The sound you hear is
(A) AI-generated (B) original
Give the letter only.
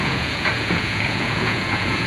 A